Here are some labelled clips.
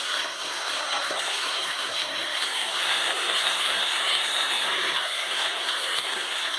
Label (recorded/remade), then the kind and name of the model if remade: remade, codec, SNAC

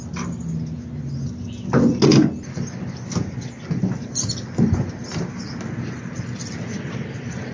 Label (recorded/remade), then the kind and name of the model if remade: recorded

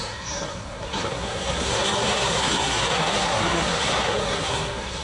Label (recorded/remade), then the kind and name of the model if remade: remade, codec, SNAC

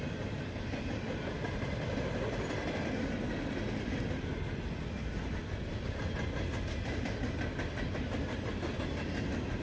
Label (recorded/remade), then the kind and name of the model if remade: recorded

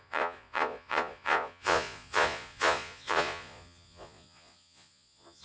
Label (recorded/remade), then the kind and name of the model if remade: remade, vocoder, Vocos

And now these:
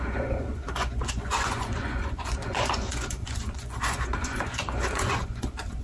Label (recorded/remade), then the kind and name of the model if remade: remade, vocoder, Vocos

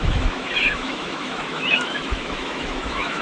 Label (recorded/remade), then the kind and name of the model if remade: remade, autoencoder, DAC-VAE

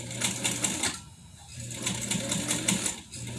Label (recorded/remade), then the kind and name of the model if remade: recorded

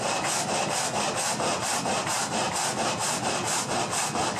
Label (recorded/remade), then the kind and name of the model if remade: recorded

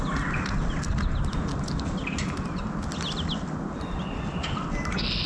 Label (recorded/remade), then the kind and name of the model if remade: recorded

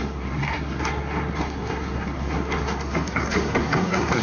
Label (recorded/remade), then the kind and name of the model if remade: remade, codec, SNAC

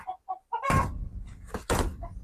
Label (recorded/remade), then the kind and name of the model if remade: recorded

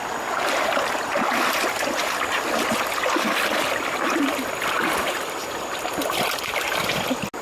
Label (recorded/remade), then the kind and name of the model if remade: recorded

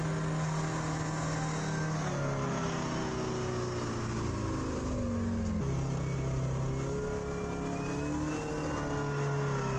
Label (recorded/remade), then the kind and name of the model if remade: recorded